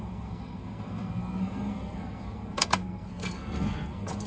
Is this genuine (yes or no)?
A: no